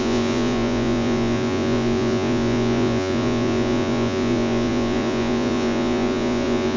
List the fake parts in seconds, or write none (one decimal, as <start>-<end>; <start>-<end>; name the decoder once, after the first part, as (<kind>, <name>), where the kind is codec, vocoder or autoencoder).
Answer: 0.0-6.8 (vocoder, Vocos)